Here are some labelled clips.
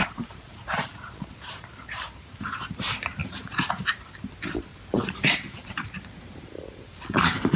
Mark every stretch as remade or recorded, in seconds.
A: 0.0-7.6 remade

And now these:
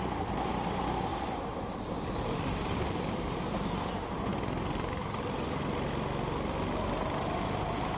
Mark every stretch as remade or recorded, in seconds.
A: 0.0-1.1 recorded; 1.1-5.9 remade; 5.9-8.0 recorded

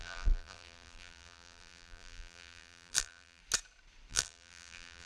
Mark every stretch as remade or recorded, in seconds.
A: 0.0-3.4 remade; 3.4-4.1 recorded; 4.1-5.1 remade

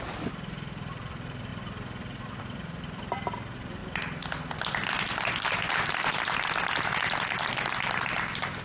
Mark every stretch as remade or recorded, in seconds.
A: 0.0-3.8 remade; 3.8-6.2 recorded; 6.2-8.6 remade

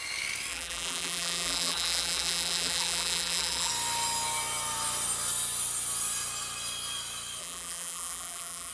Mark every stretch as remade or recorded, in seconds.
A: 0.0-0.5 recorded; 0.5-3.7 remade; 3.7-7.4 recorded; 7.4-8.7 remade

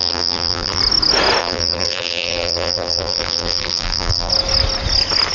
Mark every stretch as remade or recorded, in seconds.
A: 0.0-0.8 remade; 0.8-1.4 recorded; 1.4-4.3 remade; 4.3-5.3 recorded

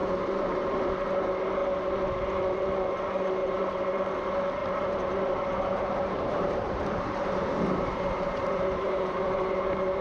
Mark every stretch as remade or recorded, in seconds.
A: 0.0-0.9 remade; 0.9-3.4 recorded; 3.4-4.1 remade; 4.1-4.6 recorded; 4.6-9.6 remade; 9.6-10.0 recorded

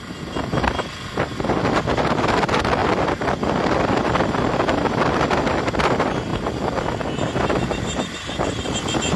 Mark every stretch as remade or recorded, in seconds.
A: 0.0-2.8 remade; 2.8-4.0 recorded; 4.0-9.2 remade